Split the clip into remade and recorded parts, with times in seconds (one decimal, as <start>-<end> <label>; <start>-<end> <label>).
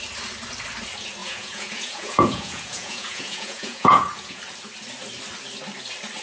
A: 0.0-1.2 recorded; 1.2-4.4 remade; 4.4-6.2 recorded